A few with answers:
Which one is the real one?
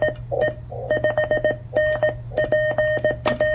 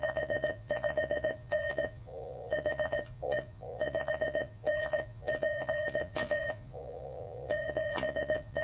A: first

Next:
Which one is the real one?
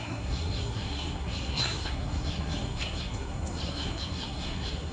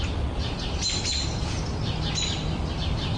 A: second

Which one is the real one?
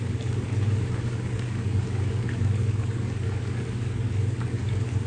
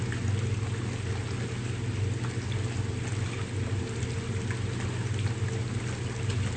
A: second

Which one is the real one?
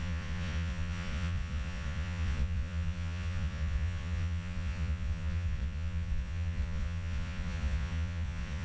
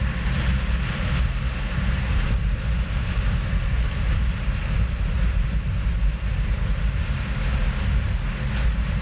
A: second